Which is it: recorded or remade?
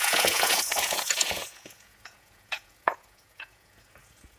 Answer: remade